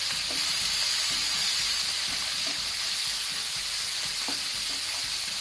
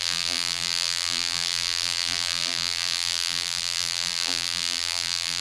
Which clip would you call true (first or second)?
first